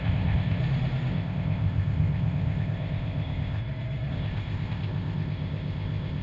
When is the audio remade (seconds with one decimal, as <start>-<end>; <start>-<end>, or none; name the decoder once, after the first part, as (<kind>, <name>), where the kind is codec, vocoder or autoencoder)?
0.0-0.6 (codec, ZipCodec); 1.1-3.6; 4.1-6.2